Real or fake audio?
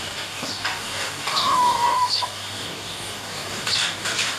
fake